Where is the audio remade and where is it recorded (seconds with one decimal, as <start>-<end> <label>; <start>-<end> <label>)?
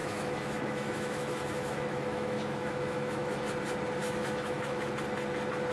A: 0.0-3.4 remade; 3.4-4.0 recorded; 4.0-4.9 remade; 4.9-5.7 recorded